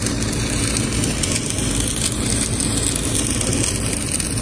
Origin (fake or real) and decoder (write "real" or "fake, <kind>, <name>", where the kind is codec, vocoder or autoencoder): real